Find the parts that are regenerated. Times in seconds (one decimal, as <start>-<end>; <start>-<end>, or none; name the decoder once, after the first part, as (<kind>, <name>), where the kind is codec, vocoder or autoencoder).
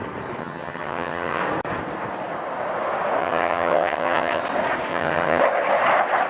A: 0.4-1.4 (vocoder, HiFi-GAN); 3.2-4.4; 4.9-5.4